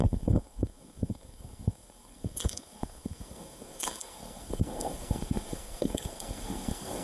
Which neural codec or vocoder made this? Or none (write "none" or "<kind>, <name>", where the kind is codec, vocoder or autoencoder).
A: codec, SNAC